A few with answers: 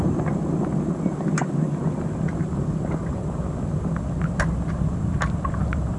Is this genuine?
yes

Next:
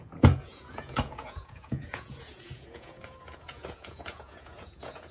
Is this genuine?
no